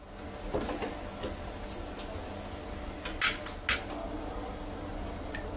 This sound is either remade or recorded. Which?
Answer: recorded